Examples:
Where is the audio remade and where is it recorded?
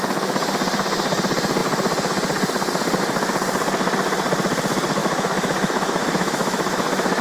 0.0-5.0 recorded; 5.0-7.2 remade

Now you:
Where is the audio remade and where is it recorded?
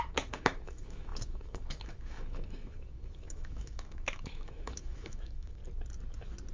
0.0-5.6 remade; 5.6-6.5 recorded